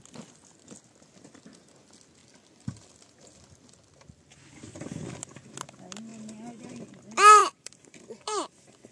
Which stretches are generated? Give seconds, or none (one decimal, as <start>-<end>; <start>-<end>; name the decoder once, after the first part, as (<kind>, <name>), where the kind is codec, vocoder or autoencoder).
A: 2.2-2.9 (vocoder, BigVGAN v2); 7.4-8.9